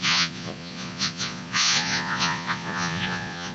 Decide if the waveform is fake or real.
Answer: fake